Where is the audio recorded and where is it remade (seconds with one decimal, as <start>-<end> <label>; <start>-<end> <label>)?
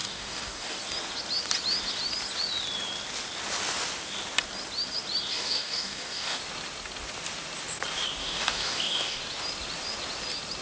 0.0-0.8 remade; 0.8-5.3 recorded; 5.3-6.4 remade; 6.4-8.2 recorded; 8.2-9.2 remade; 9.2-10.6 recorded